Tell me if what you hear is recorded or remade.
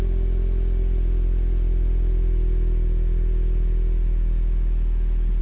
recorded